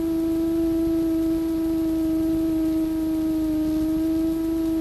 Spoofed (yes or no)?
no